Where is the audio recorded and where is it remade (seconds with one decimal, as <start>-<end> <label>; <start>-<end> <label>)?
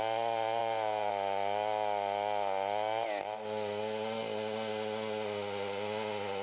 0.0-0.6 recorded; 0.6-1.1 remade; 1.1-6.4 recorded